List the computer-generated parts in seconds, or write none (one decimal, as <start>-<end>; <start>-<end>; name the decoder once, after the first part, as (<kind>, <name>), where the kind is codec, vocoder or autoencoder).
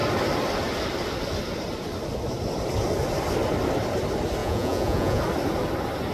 4.4-5.2 (vocoder, Vocos)